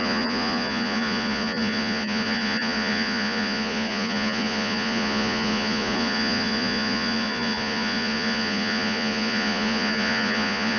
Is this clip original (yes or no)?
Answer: no